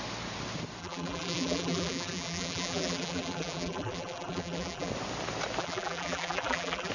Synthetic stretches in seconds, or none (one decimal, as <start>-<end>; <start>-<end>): 0.8-4.9; 5.6-6.9